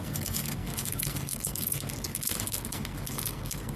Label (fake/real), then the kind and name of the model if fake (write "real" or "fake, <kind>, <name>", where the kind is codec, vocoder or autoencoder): fake, codec, SNAC